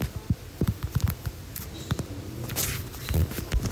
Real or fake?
fake